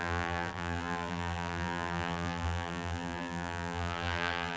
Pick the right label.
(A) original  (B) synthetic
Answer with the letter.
B